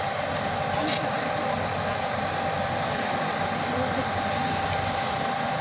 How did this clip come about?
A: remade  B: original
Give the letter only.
B